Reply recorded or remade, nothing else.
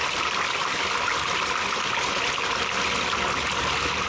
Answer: recorded